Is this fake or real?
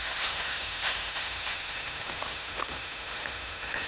fake